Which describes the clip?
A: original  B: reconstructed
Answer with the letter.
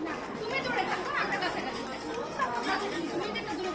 A